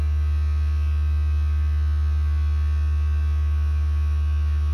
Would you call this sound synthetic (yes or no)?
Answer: no